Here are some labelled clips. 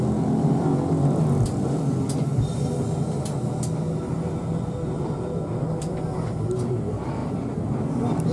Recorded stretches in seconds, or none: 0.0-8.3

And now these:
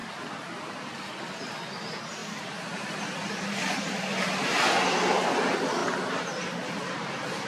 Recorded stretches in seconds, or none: 0.0-2.2; 2.8-3.6; 4.6-7.5

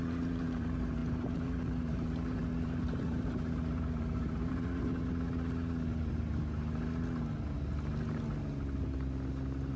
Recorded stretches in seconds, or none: 4.9-9.8

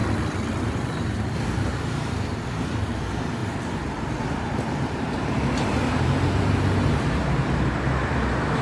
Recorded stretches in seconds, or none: 0.0-0.6

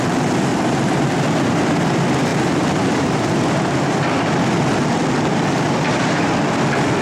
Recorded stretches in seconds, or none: 0.0-0.5; 1.8-2.3; 6.2-7.0